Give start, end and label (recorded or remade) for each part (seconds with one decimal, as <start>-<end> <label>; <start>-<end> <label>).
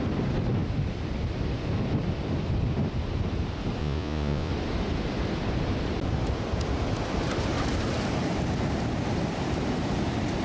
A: 0.0-3.8 recorded; 3.8-4.5 remade; 4.5-10.4 recorded